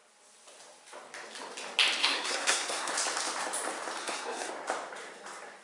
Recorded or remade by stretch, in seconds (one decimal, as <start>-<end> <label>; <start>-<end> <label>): 0.0-2.0 recorded; 2.0-2.9 remade; 2.9-4.0 recorded; 4.0-4.5 remade; 4.5-5.6 recorded